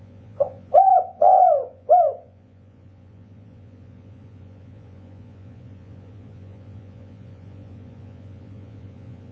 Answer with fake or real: fake